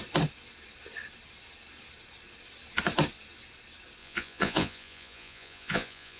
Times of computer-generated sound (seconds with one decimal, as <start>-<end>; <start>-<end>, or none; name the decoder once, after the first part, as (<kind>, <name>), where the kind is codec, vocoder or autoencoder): 4.0-6.2 (vocoder, Vocos)